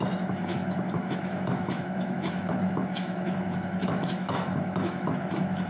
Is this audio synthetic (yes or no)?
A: yes